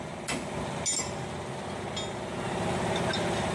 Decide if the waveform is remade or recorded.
recorded